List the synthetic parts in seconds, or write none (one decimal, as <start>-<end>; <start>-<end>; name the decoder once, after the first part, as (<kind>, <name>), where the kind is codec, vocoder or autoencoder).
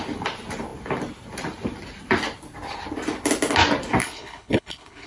4.0-5.1 (codec, HILCodec)